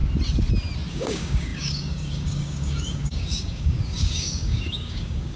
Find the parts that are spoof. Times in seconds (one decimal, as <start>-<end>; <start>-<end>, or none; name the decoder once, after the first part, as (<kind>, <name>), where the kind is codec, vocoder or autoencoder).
0.9-5.4 (codec, DAC)

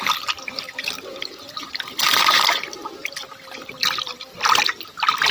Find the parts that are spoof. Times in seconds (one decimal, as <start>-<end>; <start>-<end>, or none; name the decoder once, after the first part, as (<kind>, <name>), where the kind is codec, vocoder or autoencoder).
none

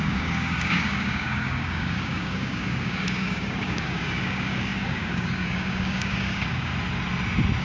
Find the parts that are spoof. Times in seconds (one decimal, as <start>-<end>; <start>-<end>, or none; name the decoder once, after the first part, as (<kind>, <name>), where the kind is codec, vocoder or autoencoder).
0.0-6.7 (codec, DAC)

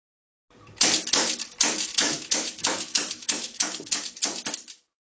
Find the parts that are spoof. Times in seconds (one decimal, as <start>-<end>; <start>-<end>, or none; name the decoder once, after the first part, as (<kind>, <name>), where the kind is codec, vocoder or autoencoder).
1.9-4.0 (autoencoder, DAC-VAE)

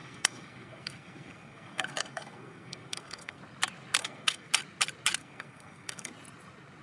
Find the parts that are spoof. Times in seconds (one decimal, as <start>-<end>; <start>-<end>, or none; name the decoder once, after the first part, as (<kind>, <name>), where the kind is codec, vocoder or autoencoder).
0.0-3.4 (codec, SNAC); 4.0-4.5; 5.2-6.1

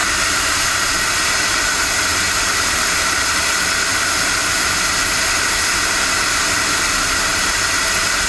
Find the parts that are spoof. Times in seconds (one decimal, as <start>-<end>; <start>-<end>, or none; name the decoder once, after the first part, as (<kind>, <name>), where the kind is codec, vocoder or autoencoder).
0.0-3.2 (vocoder, BigVGAN v2); 7.3-7.8

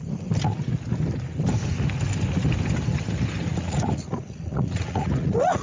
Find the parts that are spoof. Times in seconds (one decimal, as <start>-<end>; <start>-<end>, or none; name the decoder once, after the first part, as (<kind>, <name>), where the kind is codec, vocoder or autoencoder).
3.5-5.6 (vocoder, Vocos)

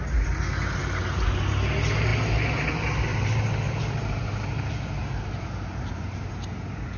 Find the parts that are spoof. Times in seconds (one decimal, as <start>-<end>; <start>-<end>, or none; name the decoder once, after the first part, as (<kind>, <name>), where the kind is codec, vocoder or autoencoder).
3.1-6.3 (vocoder, BigVGAN v2)